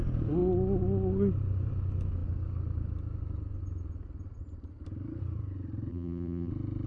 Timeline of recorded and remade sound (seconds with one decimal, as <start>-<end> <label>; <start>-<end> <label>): 0.0-5.9 recorded; 5.9-6.5 remade; 6.5-6.9 recorded